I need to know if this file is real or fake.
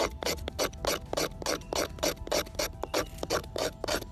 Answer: real